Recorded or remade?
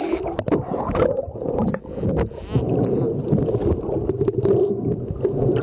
remade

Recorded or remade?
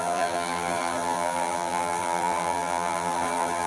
remade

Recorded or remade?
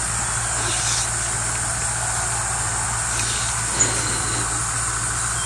remade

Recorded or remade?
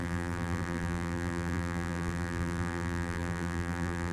remade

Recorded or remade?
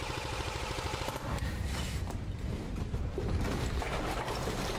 remade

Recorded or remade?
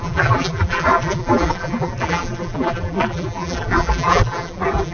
remade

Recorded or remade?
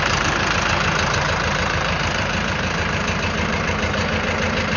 remade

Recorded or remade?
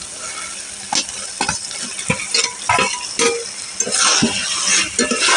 recorded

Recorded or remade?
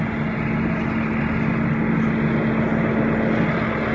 recorded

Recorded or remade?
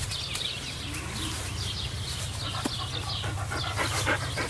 recorded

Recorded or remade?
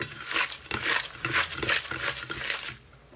recorded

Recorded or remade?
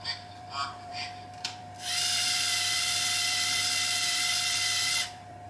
remade